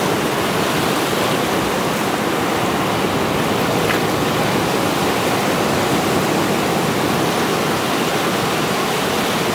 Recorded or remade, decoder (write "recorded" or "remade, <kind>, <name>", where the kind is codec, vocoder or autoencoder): recorded